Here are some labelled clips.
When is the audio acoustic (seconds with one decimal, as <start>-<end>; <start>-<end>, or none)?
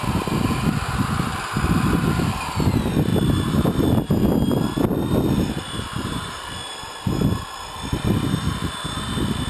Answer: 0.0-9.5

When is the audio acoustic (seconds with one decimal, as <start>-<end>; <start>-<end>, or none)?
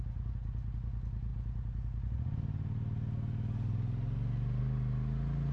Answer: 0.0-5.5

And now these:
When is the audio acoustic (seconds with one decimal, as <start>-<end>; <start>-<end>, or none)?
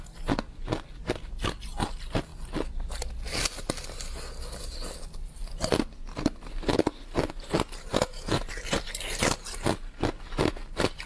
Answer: 0.0-11.1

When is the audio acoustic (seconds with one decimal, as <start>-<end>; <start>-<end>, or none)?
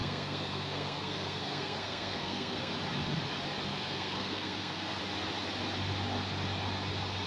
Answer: 2.7-3.7; 5.0-7.3